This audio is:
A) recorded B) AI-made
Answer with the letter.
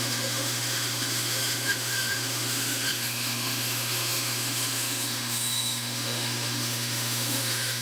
B